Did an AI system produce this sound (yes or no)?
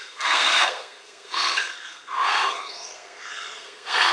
yes